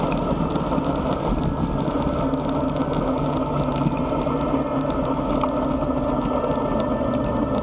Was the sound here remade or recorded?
recorded